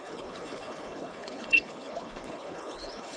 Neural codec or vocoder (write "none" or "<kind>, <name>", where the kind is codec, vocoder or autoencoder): codec, HILCodec